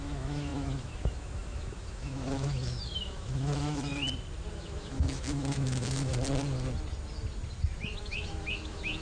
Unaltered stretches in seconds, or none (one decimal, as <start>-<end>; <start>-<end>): 3.9-4.5; 6.1-8.0